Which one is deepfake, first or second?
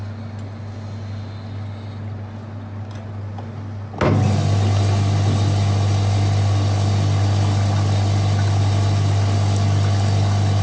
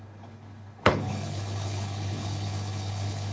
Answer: second